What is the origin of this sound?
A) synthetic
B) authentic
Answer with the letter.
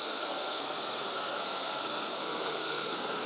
A